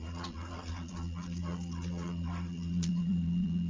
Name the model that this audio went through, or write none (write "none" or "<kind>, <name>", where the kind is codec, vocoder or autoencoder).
vocoder, Vocos